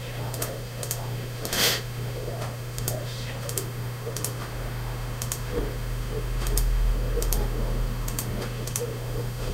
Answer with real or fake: fake